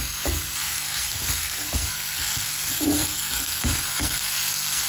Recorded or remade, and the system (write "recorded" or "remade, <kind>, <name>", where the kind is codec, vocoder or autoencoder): remade, codec, SNAC